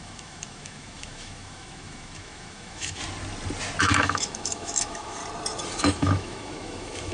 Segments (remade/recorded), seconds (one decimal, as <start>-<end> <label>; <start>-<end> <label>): 0.0-3.0 remade; 3.0-3.8 recorded; 3.8-5.2 remade; 5.2-5.8 recorded; 5.8-7.1 remade